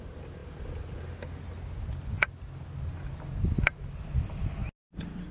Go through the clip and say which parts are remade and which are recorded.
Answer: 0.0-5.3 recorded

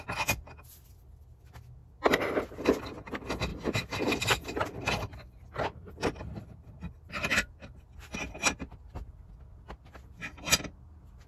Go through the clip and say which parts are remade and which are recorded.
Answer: 0.0-11.3 recorded